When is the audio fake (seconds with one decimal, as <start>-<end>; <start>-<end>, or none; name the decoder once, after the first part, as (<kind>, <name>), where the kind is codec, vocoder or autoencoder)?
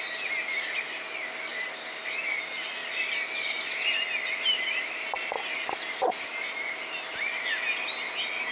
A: none